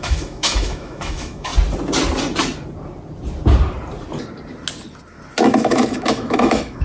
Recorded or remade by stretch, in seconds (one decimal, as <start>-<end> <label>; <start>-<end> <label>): 0.0-1.5 remade; 1.5-5.4 recorded; 5.4-6.8 remade